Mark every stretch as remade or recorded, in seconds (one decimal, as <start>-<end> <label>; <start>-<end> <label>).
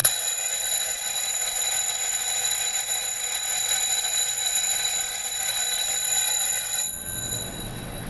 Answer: 0.0-8.1 remade